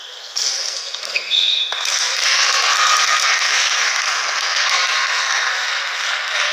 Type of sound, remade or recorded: remade